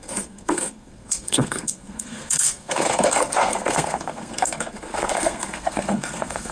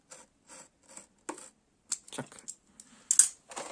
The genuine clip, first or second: second